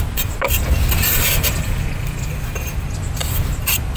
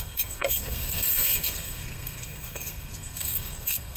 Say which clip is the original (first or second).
first